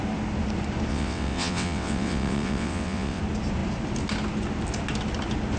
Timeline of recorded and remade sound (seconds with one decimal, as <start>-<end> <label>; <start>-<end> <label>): 0.0-0.9 recorded; 0.9-3.2 remade; 3.2-5.6 recorded